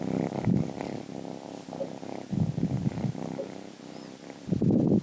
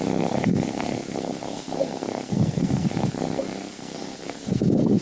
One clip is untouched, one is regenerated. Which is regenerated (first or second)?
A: second